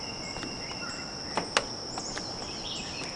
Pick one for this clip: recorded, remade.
recorded